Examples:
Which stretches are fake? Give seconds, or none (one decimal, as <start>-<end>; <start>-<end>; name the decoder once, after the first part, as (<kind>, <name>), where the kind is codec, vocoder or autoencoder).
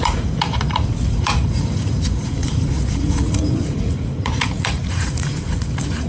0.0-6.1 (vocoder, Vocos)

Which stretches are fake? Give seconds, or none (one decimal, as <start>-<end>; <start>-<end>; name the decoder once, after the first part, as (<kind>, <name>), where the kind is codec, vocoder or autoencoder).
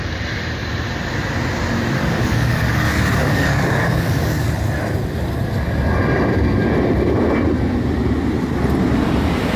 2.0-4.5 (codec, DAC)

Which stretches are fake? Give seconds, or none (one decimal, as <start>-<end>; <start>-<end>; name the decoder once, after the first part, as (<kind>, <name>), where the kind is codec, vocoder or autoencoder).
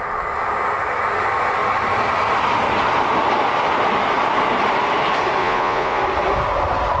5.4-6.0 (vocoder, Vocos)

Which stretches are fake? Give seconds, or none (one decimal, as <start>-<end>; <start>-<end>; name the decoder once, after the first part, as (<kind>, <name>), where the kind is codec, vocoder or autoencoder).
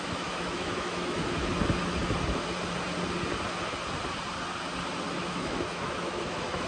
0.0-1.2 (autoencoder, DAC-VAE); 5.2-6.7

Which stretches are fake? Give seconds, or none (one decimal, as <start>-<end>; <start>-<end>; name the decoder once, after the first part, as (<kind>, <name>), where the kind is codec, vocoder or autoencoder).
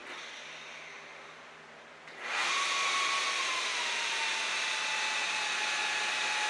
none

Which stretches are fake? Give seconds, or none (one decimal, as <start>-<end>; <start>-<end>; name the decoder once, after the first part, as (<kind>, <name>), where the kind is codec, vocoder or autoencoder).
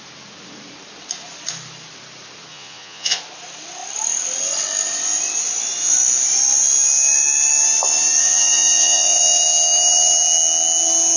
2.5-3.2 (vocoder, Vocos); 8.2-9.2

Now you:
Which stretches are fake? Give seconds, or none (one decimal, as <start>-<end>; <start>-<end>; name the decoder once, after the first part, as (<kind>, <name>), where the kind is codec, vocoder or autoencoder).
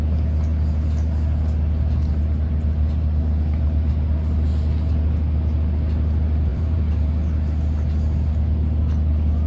6.5-7.1 (vocoder, BigVGAN v2)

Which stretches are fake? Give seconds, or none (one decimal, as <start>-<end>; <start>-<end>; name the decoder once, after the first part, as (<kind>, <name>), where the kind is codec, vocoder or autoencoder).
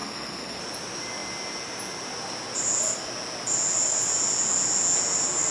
0.0-0.6 (codec, SNAC)